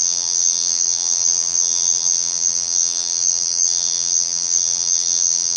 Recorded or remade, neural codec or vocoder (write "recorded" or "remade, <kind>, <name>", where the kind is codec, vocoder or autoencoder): remade, vocoder, BigVGAN v2